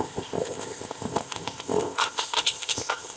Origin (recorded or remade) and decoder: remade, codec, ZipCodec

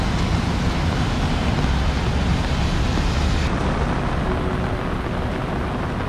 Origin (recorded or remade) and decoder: recorded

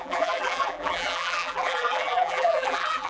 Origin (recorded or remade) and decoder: remade, vocoder, BigVGAN v2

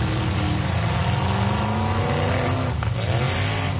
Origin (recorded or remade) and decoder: recorded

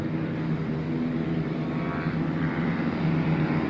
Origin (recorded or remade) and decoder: remade, vocoder, BigVGAN v2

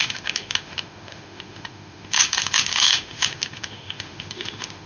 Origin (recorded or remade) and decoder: remade, autoencoder, DAC-VAE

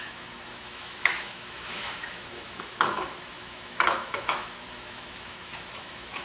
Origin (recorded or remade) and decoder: remade, autoencoder, DAC-VAE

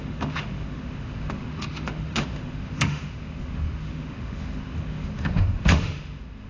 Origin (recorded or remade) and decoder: remade, autoencoder, DAC-VAE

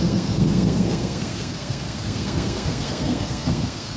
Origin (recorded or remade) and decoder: remade, codec, SNAC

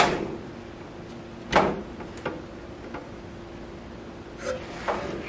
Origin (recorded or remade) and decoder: recorded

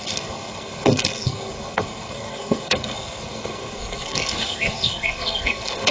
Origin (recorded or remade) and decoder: remade, codec, SNAC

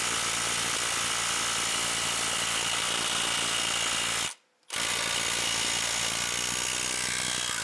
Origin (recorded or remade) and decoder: recorded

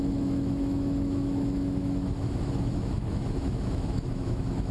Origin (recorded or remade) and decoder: remade, autoencoder, DAC-VAE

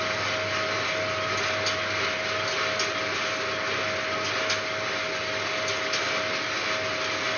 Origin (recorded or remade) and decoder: recorded